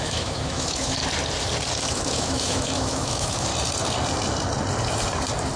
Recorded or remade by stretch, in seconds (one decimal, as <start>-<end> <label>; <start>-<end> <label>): 0.0-1.0 remade; 1.0-1.9 recorded; 1.9-3.5 remade; 3.5-5.6 recorded